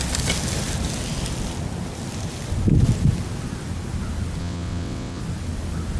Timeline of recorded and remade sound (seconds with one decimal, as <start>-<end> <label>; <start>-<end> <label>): 0.0-4.4 recorded; 4.4-5.2 remade; 5.2-6.0 recorded